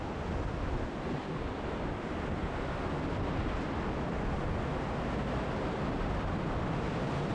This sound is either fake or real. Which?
real